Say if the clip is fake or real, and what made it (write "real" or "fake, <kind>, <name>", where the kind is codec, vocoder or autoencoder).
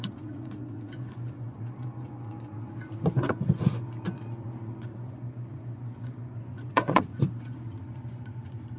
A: fake, vocoder, Vocos